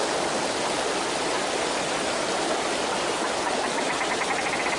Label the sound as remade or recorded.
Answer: recorded